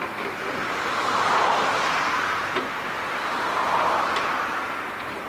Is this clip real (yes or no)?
no